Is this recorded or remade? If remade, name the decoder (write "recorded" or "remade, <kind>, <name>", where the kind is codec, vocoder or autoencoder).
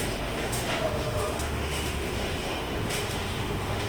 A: remade, autoencoder, DAC-VAE